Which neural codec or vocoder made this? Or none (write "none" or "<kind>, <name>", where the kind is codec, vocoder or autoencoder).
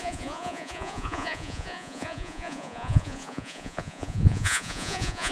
vocoder, Vocos